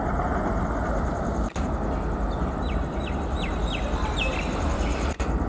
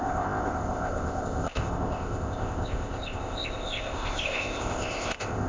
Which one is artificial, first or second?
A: second